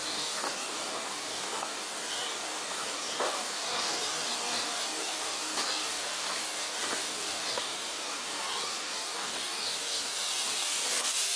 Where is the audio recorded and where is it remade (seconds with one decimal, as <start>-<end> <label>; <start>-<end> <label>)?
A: 0.0-11.4 remade